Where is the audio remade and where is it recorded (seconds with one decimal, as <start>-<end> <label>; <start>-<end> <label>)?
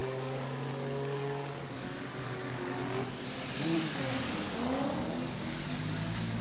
0.0-2.8 remade; 2.8-3.6 recorded; 3.6-6.4 remade